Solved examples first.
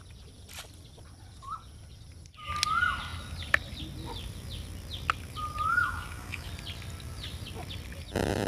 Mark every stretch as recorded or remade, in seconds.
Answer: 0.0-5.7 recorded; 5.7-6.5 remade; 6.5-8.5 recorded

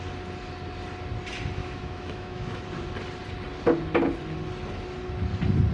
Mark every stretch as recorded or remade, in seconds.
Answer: 0.0-1.6 recorded; 1.6-2.6 remade; 2.6-5.7 recorded

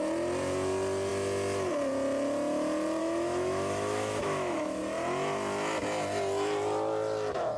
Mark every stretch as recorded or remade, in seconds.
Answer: 0.0-3.0 recorded; 3.0-4.8 remade; 4.8-7.6 recorded

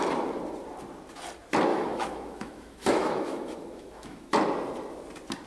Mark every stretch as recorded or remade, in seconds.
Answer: 0.0-1.7 recorded; 1.7-4.3 remade; 4.3-5.5 recorded